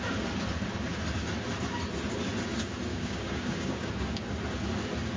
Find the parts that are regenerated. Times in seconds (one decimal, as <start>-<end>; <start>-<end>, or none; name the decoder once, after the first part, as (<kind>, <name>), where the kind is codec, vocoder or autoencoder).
2.9-3.9 (codec, DAC)